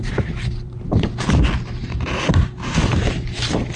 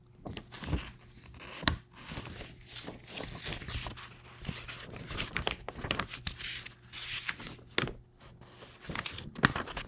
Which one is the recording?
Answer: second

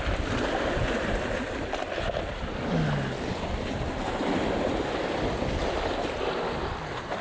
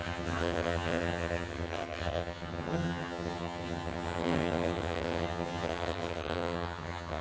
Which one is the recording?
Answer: first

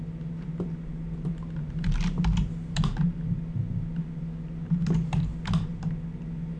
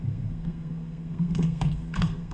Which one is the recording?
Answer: first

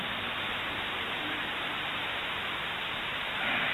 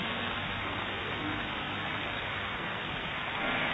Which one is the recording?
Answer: first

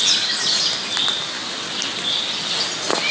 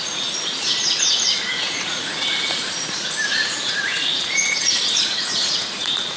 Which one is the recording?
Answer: first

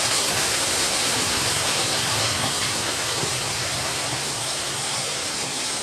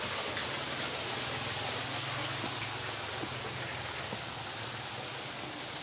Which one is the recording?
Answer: second